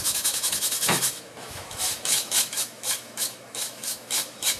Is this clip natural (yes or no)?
no